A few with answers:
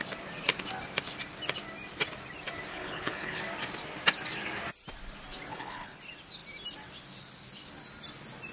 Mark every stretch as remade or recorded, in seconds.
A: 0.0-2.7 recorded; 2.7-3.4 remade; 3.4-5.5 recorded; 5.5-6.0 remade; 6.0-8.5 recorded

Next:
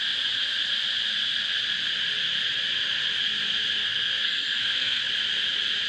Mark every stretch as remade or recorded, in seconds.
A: 0.0-3.8 recorded; 3.8-5.0 remade; 5.0-5.9 recorded

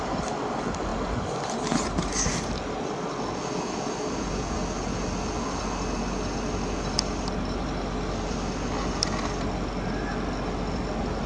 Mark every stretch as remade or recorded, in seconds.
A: 0.0-11.3 recorded

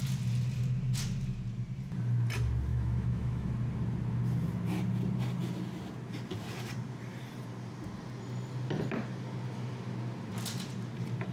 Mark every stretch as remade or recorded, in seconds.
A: 0.0-2.7 recorded; 2.7-3.5 remade; 3.5-11.3 recorded

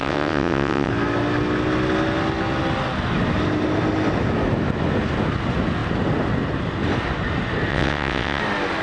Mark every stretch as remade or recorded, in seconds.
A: 0.0-0.9 remade; 0.9-7.7 recorded; 7.7-8.4 remade; 8.4-8.8 recorded

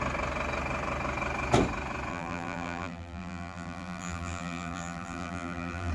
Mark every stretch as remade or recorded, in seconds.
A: 0.0-2.1 recorded; 2.1-5.9 remade

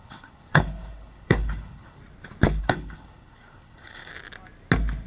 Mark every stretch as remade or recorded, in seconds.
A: 0.0-2.0 remade; 2.0-2.6 recorded; 2.6-4.1 remade; 4.1-5.1 recorded